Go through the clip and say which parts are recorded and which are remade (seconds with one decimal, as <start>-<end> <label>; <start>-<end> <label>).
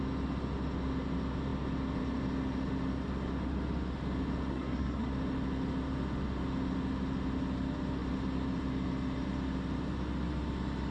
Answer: 0.0-4.5 recorded; 4.5-5.1 remade; 5.1-10.9 recorded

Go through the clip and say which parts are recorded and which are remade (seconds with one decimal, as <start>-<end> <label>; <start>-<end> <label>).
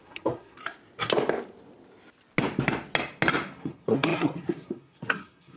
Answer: 0.0-0.6 remade; 0.6-3.6 recorded; 3.6-5.6 remade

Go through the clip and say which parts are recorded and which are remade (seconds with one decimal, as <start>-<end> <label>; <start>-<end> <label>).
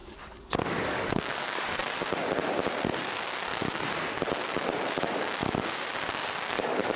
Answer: 0.0-1.8 remade; 1.8-5.0 recorded; 5.0-5.4 remade; 5.4-6.5 recorded; 6.5-7.0 remade